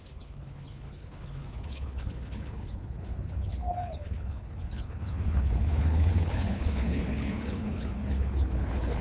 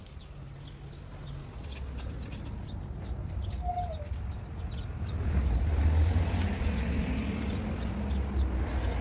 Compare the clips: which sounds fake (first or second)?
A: first